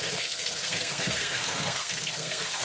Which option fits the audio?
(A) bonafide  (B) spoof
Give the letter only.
B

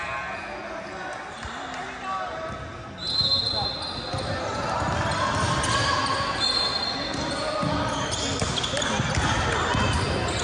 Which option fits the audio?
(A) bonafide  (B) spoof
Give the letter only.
A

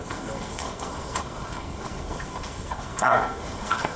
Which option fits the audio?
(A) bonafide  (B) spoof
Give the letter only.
B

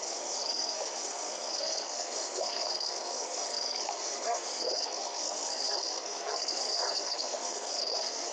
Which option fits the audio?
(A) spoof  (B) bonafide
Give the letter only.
A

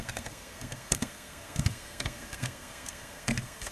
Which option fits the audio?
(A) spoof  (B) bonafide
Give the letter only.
A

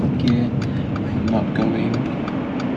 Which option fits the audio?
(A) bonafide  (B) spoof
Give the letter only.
A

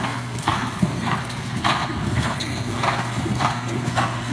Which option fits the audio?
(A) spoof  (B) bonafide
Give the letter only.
A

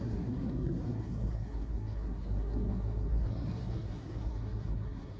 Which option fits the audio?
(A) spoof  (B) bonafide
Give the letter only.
A